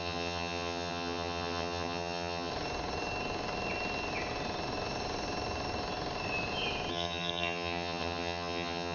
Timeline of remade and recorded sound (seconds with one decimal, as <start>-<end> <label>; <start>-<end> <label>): 0.0-2.5 remade; 2.5-6.9 recorded; 6.9-8.9 remade